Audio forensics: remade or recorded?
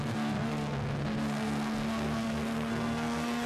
remade